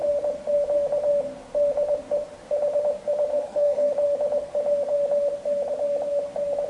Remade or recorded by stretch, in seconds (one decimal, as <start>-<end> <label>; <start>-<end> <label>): 0.0-3.3 recorded; 3.3-3.9 remade; 3.9-6.7 recorded